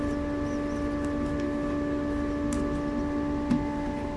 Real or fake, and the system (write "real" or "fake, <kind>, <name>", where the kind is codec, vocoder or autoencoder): real